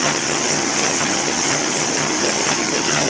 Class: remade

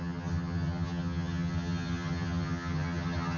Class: remade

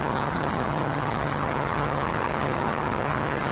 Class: remade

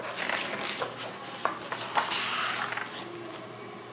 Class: recorded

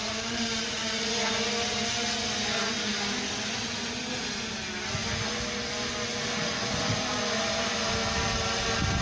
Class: recorded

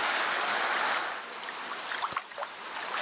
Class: recorded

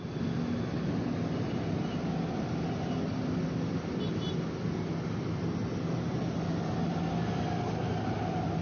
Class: recorded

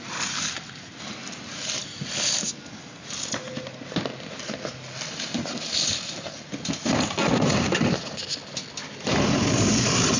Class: recorded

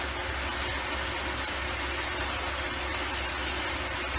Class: recorded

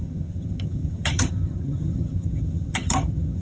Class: remade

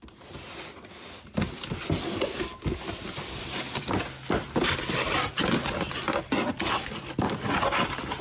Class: recorded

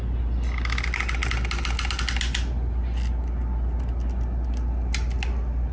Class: recorded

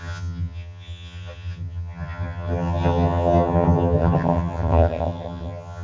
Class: remade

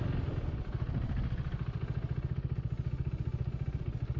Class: recorded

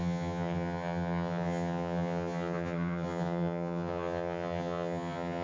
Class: remade